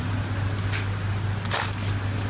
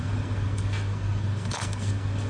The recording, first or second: first